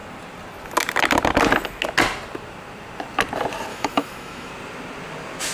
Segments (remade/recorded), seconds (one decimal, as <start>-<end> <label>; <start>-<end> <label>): 0.0-3.7 recorded; 3.7-4.5 remade; 4.5-5.5 recorded